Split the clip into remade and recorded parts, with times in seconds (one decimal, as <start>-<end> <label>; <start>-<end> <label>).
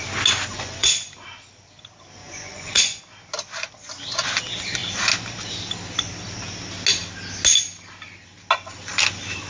0.0-0.5 recorded; 0.5-1.1 remade; 1.1-2.2 recorded; 2.2-3.0 remade; 3.0-9.5 recorded